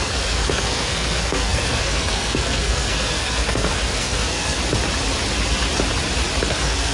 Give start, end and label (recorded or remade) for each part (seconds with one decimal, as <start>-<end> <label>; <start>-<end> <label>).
0.0-4.6 remade; 4.6-6.5 recorded; 6.5-6.9 remade